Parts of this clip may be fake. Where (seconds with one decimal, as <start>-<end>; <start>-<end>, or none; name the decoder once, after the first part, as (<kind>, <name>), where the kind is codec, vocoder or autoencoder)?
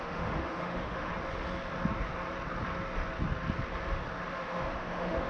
0.0-1.1 (autoencoder, DAC-VAE); 4.3-5.3